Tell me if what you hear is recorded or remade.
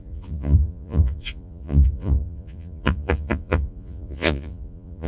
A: remade